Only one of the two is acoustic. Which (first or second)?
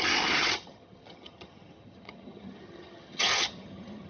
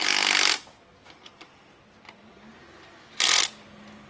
second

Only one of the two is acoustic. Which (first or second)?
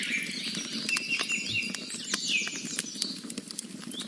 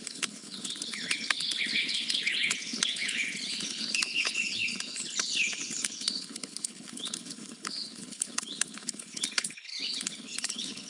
first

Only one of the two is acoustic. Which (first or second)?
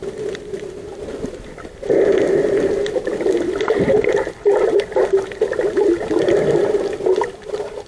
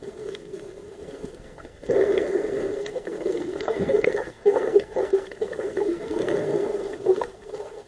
first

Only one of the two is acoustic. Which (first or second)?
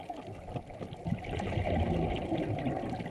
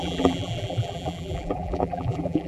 first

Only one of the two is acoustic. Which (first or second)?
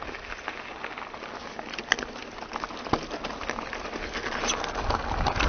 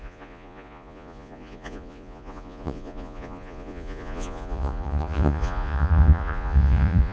first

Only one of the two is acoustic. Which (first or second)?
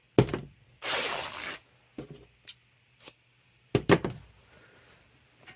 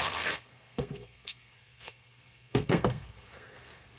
first